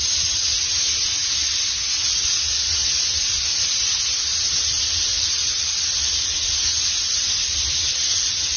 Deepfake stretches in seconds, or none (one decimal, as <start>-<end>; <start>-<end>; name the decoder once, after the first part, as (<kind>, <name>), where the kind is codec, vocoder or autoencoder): none